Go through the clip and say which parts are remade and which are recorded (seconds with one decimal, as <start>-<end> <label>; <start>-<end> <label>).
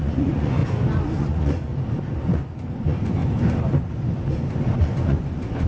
0.0-0.6 remade; 0.6-1.2 recorded; 1.2-1.7 remade; 1.7-2.7 recorded; 2.7-3.2 remade; 3.2-4.8 recorded; 4.8-5.7 remade